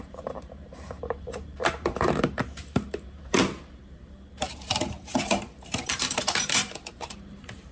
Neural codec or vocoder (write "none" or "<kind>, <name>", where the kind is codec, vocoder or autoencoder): vocoder, BigVGAN v2